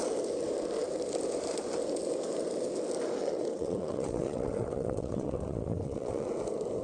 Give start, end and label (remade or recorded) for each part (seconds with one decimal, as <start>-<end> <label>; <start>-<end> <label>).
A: 0.0-3.2 recorded; 3.2-6.3 remade; 6.3-6.8 recorded